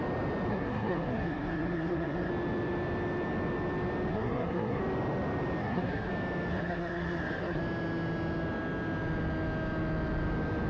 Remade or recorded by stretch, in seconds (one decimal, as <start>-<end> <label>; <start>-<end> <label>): 0.0-0.5 recorded; 0.5-2.3 remade; 2.3-4.1 recorded; 4.1-4.8 remade; 4.8-5.6 recorded; 5.6-6.1 remade; 6.1-6.5 recorded; 6.5-7.6 remade; 7.6-10.7 recorded